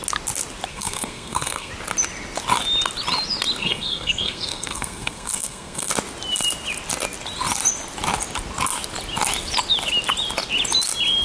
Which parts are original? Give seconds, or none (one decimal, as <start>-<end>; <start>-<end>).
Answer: 0.0-0.7; 1.7-3.6; 5.9-11.2